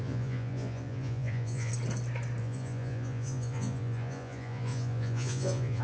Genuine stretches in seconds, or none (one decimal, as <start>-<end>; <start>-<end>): 1.7-2.4